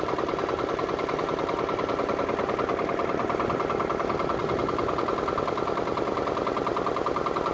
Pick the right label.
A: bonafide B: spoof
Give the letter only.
A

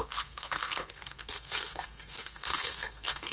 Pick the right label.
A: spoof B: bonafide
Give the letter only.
A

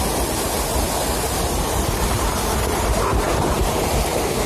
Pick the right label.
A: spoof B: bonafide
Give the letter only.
B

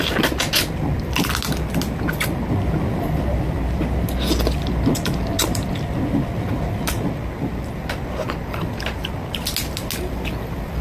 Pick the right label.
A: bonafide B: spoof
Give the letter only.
A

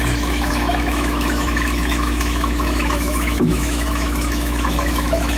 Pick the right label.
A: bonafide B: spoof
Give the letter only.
B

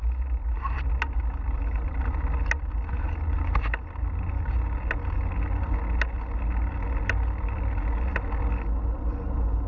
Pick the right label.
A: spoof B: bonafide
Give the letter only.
B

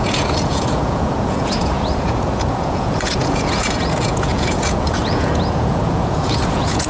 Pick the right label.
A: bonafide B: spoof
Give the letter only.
B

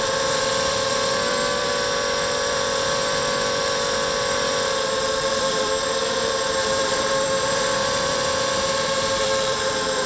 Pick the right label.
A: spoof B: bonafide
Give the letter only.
A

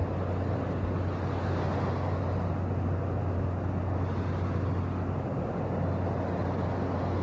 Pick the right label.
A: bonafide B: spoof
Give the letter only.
A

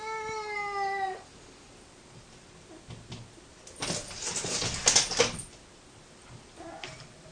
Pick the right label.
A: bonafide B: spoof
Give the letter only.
A